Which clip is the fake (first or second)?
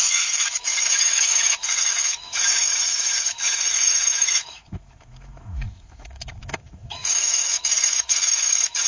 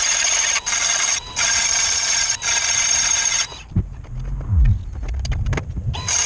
first